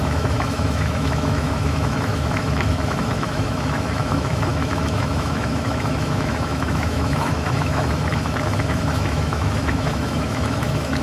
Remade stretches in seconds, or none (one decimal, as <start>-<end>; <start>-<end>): 0.0-11.0

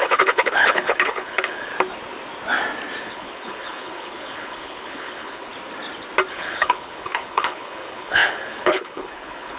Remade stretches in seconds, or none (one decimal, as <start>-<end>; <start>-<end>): 0.0-1.7; 3.0-5.5; 6.3-9.6

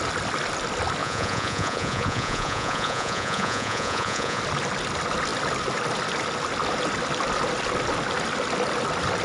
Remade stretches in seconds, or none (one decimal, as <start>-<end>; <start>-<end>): 1.0-4.4

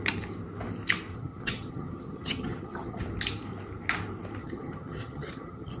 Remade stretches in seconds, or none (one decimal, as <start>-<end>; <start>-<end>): 1.1-3.0; 4.4-5.8